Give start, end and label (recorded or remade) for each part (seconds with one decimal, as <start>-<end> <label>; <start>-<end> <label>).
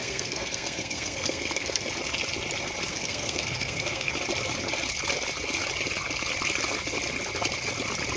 0.0-1.9 remade; 1.9-2.9 recorded; 2.9-4.1 remade; 4.1-8.2 recorded